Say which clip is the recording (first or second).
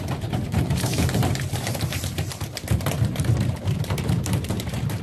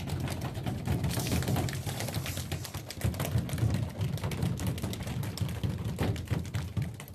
second